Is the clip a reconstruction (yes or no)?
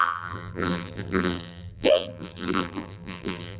yes